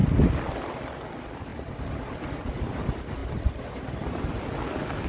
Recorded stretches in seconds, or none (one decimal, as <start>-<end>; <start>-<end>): 0.0-5.1